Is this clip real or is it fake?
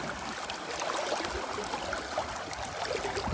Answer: real